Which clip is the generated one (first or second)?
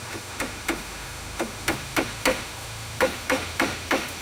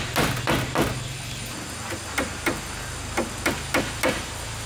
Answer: first